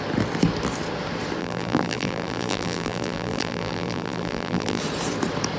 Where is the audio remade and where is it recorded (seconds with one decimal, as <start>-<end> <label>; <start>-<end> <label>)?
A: 0.0-1.4 recorded; 1.4-4.8 remade; 4.8-5.6 recorded